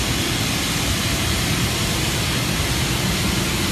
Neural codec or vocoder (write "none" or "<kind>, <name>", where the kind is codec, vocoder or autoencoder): none